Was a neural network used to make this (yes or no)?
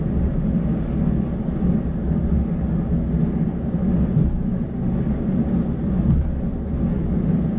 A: no